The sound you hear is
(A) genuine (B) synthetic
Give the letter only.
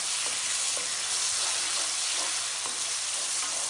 A